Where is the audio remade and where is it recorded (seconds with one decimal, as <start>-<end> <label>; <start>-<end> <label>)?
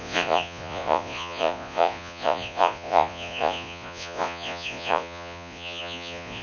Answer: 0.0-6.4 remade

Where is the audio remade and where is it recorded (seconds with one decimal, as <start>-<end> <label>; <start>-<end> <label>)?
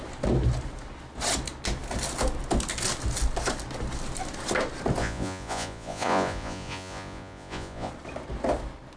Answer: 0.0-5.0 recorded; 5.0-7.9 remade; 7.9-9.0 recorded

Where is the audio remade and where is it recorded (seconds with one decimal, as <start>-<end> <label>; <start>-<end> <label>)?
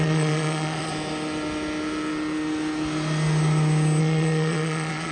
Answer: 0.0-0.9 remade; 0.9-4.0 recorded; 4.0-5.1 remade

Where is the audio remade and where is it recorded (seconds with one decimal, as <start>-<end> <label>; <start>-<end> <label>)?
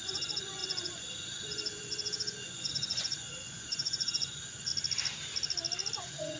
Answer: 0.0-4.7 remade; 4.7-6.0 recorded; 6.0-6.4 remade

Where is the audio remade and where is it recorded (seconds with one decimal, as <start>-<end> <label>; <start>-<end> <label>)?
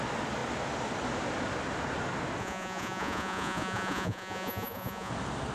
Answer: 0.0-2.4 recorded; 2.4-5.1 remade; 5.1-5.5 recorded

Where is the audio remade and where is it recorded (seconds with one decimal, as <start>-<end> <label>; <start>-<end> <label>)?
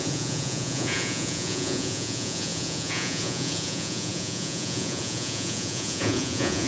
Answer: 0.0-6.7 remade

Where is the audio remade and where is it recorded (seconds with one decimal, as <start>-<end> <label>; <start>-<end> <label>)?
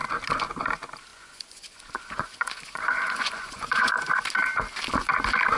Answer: 0.0-1.1 recorded; 1.1-4.1 remade; 4.1-5.6 recorded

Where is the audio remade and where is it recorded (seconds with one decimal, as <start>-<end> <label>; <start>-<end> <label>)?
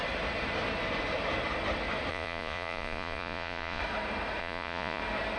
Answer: 0.0-2.1 recorded; 2.1-3.8 remade; 3.8-4.4 recorded; 4.4-5.0 remade; 5.0-5.4 recorded